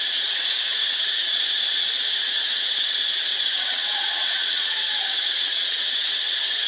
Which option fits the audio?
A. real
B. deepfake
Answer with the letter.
B